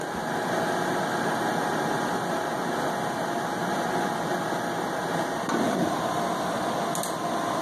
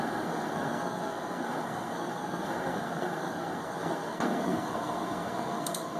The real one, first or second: first